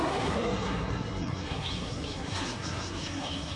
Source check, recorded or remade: remade